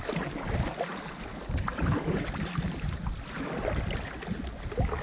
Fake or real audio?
real